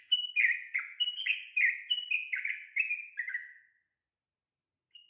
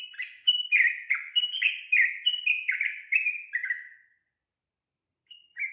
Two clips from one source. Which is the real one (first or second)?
first